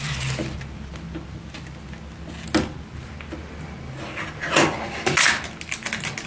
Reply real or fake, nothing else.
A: real